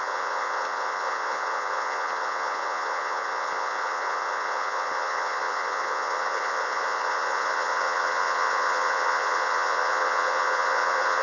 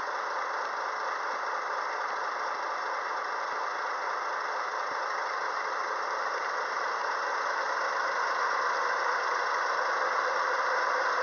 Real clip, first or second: second